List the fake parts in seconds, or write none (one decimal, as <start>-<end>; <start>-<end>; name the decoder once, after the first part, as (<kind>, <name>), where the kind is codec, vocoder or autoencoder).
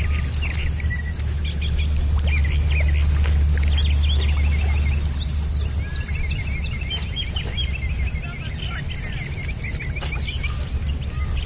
none